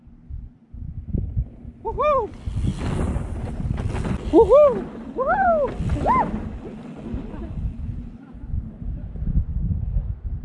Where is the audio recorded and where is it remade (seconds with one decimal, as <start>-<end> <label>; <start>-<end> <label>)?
0.0-10.4 recorded